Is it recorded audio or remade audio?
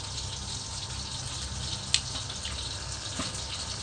recorded